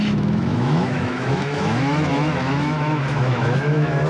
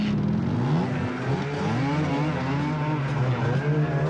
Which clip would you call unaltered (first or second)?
second